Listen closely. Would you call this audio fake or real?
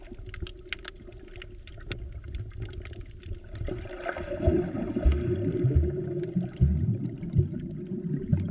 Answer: real